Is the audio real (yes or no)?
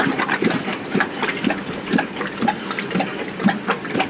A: no